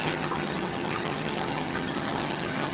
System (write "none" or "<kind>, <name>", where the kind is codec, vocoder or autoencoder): vocoder, HiFi-GAN